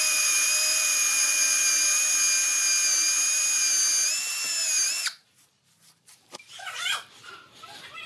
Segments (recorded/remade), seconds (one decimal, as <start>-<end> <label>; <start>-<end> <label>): 0.0-1.6 remade; 1.6-6.1 recorded; 6.1-8.1 remade